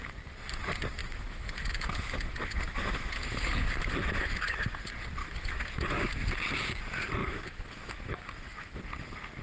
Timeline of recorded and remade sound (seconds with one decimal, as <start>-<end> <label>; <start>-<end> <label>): 0.0-1.0 recorded; 1.0-4.8 remade; 4.8-5.2 recorded; 5.2-6.1 remade; 6.1-7.2 recorded; 7.2-8.8 remade; 8.8-9.4 recorded